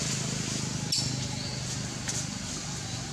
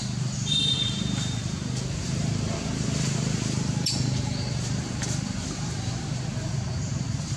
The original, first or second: first